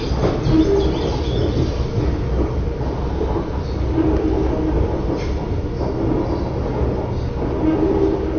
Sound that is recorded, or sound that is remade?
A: recorded